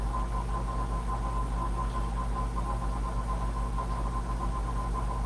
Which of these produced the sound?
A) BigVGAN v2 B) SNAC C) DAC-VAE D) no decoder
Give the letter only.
D